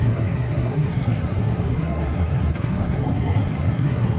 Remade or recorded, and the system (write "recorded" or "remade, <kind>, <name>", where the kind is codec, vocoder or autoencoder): remade, codec, SNAC